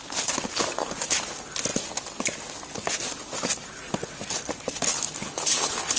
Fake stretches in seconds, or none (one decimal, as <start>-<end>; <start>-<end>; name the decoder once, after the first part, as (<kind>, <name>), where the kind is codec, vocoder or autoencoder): 5.2-6.0 (codec, HILCodec)